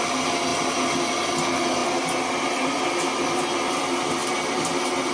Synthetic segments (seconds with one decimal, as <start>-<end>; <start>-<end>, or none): none

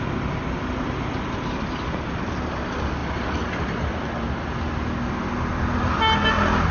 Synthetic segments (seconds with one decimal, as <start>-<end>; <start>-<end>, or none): none

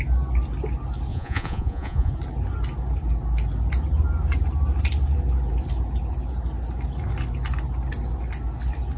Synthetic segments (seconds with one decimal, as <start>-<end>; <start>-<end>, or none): 1.1-2.1

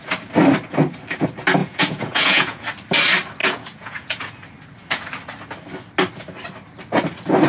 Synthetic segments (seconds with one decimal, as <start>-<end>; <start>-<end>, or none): 1.6-2.6; 3.4-4.3

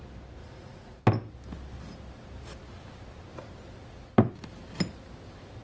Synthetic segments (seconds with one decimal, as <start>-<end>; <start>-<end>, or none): 0.4-1.0

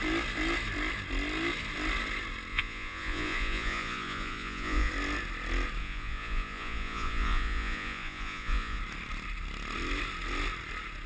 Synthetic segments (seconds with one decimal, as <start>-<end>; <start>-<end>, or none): 2.5-4.9; 5.8-8.8